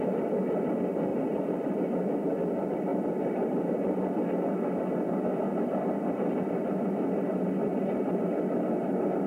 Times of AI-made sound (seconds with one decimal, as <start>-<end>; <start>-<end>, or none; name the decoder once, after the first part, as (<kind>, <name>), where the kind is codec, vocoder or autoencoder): 1.1-1.8 (vocoder, BigVGAN v2); 2.9-4.2